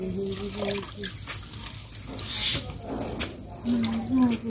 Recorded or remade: recorded